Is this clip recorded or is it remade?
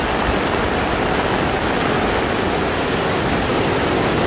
recorded